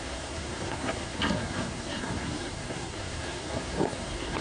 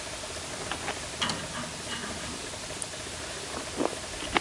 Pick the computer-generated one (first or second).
first